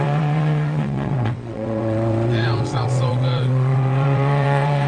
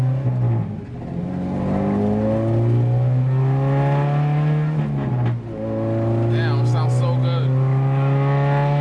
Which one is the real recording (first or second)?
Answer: second